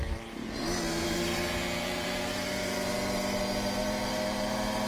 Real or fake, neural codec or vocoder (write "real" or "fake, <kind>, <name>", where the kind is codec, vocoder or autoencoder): fake, vocoder, BigVGAN v2